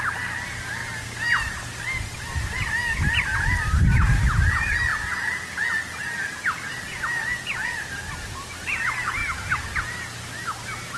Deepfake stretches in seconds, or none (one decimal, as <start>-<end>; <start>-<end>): none